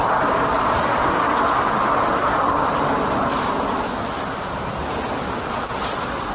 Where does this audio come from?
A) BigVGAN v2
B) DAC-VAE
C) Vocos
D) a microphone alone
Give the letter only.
D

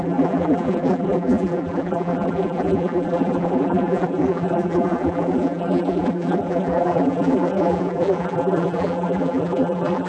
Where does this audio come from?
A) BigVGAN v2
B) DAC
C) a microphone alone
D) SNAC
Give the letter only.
A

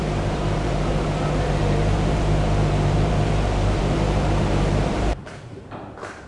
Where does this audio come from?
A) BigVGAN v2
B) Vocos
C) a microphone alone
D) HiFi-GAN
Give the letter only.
A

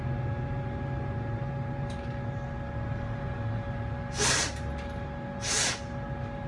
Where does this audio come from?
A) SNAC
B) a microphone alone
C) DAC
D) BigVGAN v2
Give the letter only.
B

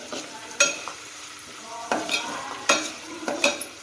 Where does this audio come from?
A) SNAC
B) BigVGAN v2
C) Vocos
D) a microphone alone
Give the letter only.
B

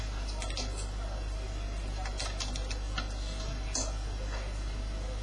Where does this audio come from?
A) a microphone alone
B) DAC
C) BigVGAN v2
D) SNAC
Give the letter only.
A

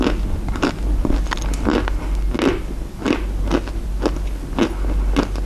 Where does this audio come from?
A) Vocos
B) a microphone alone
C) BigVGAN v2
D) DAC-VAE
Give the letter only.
B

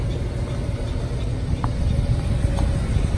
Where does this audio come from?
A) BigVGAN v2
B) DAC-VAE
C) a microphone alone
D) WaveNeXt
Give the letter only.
C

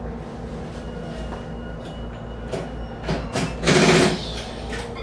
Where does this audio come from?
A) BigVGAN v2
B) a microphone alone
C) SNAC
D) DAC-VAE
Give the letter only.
B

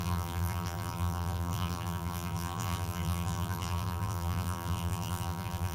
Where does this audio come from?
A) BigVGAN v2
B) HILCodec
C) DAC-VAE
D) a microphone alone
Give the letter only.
A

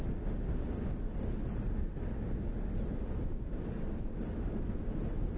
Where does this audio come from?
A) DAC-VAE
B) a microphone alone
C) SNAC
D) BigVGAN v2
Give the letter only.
B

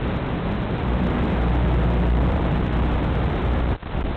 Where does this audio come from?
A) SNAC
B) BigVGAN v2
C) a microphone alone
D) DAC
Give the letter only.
B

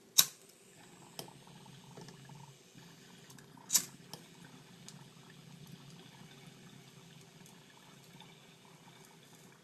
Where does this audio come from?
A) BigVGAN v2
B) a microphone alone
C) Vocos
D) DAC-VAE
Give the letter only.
B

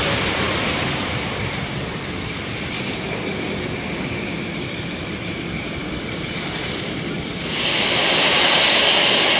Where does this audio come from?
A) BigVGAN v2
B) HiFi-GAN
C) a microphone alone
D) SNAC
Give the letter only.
A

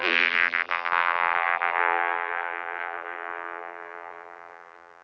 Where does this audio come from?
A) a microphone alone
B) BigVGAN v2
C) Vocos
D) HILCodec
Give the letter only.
B